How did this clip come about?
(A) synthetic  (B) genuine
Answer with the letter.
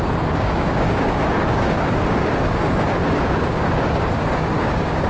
A